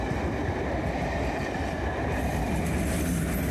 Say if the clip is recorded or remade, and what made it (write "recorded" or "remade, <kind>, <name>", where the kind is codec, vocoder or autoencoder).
recorded